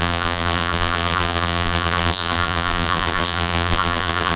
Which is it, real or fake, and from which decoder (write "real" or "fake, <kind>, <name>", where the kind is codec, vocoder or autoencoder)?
fake, vocoder, BigVGAN v2